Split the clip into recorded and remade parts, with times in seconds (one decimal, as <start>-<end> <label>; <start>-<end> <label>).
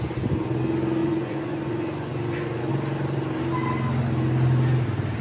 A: 0.0-1.0 recorded; 1.0-2.7 remade; 2.7-5.2 recorded